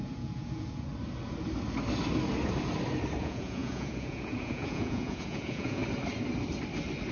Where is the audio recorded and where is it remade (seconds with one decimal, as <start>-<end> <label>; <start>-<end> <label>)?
0.0-0.9 remade; 0.9-3.2 recorded; 3.2-5.8 remade; 5.8-7.1 recorded